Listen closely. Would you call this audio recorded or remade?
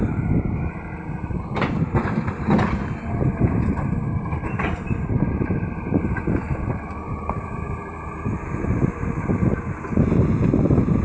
remade